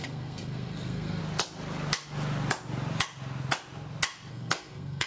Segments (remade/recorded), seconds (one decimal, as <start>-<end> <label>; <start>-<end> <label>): 0.0-1.2 remade; 1.2-4.3 recorded; 4.3-5.1 remade